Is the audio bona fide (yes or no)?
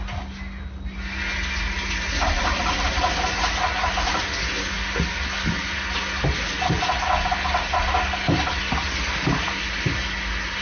yes